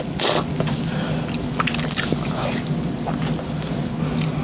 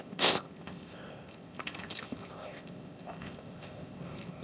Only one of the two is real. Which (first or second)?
first